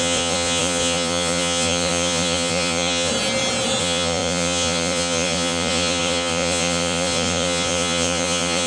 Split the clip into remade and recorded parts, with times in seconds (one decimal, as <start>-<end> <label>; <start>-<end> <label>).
0.0-3.1 remade; 3.1-3.8 recorded; 3.8-8.7 remade